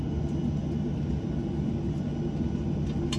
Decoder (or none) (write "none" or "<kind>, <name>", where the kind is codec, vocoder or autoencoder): none